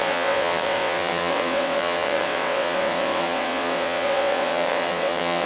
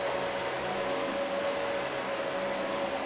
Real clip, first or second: second